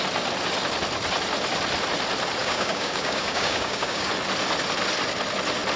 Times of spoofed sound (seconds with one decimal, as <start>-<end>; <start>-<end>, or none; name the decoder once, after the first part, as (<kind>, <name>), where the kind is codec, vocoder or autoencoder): 2.4-4.1 (codec, DAC)